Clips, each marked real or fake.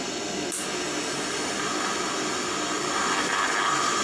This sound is real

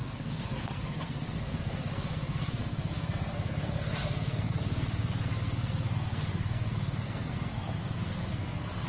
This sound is fake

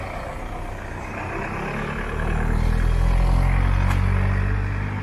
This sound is real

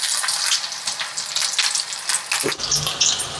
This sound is real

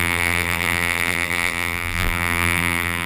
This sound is fake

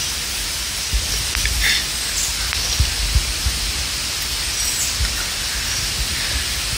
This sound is real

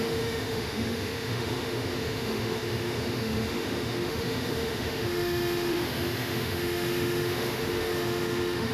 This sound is fake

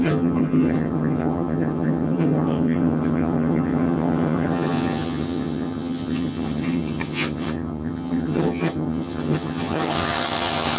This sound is fake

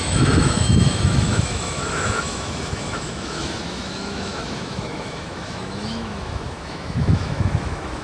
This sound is fake